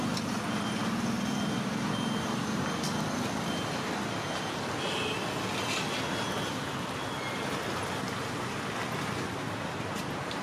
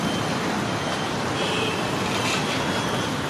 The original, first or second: first